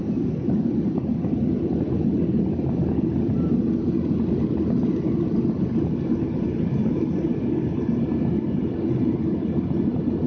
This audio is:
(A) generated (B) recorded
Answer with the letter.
B